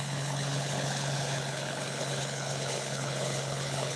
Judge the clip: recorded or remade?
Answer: remade